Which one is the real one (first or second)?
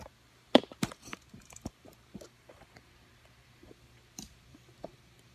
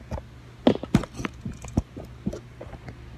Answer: second